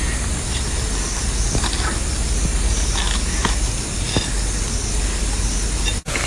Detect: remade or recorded recorded